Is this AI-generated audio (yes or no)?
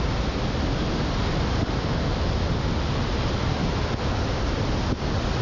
no